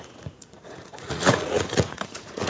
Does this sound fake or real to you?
fake